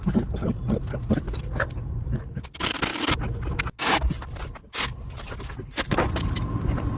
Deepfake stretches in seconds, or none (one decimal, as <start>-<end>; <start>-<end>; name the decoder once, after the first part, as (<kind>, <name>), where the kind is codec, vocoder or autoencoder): none